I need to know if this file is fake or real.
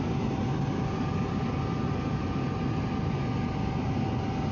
real